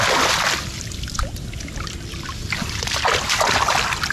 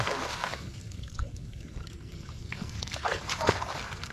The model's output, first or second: second